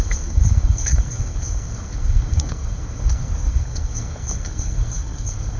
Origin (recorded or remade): remade